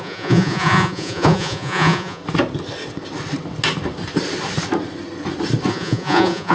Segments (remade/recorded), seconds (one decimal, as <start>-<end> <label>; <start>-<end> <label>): 0.0-2.2 remade; 2.2-5.7 recorded; 5.7-6.5 remade